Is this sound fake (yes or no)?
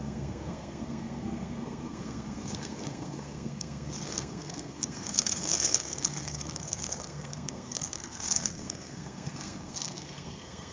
yes